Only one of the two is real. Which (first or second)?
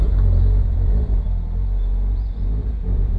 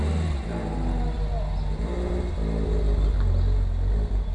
second